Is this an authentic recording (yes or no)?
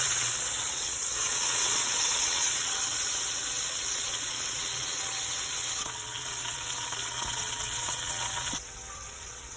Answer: no